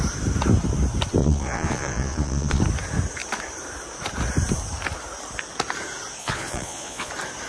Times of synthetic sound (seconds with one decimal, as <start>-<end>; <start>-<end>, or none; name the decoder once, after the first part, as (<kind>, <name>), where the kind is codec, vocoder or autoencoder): 1.2-2.6 (vocoder, Vocos); 6.2-7.1

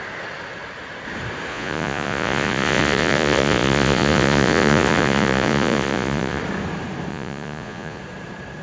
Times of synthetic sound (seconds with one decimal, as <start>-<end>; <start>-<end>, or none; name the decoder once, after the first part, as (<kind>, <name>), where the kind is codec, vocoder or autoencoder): 1.5-6.4 (vocoder, Vocos); 7.1-8.0

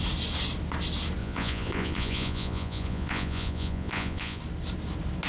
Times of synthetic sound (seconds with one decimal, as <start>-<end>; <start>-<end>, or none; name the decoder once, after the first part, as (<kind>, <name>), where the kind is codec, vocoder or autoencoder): 1.2-4.4 (vocoder, Vocos)

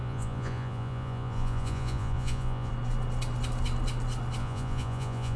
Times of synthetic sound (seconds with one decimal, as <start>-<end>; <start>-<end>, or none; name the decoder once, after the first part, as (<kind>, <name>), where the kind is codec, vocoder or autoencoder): 0.0-2.7 (vocoder, Vocos); 4.4-5.4

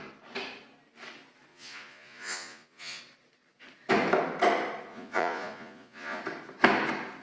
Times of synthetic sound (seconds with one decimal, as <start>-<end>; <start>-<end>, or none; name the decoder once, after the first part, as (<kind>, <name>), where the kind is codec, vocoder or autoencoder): 1.5-3.0 (vocoder, Vocos); 4.9-6.2